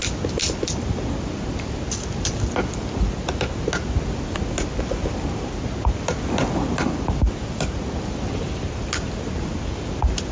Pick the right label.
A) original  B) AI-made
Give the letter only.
A